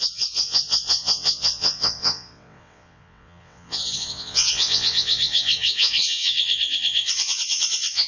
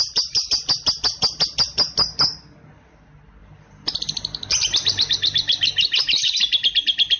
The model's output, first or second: first